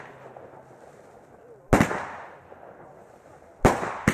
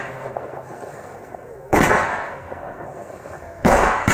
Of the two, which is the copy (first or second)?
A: second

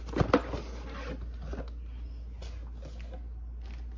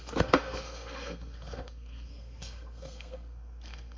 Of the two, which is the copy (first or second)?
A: second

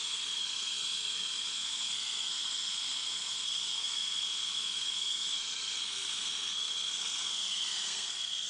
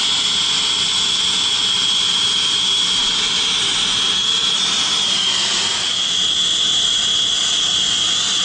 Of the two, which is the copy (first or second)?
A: first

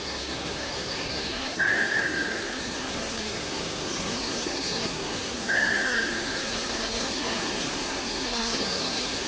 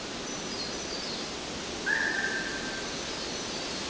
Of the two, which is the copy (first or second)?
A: first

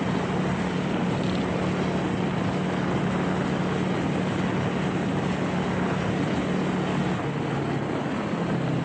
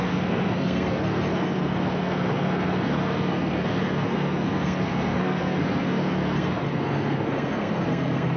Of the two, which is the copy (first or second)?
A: second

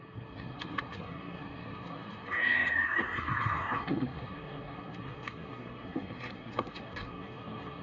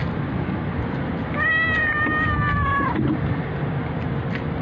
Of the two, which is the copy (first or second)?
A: first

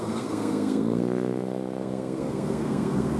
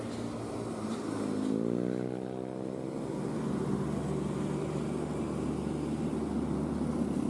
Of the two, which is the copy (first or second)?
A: first